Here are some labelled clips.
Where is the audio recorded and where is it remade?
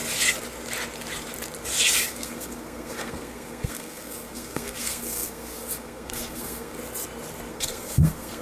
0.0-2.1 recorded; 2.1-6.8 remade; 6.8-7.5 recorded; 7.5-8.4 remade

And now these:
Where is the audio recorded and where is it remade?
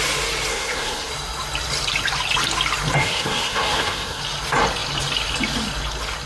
0.0-0.5 recorded; 0.5-1.1 remade; 1.1-3.0 recorded; 3.0-4.2 remade; 4.2-6.3 recorded